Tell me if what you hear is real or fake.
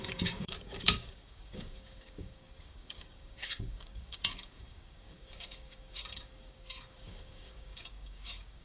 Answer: fake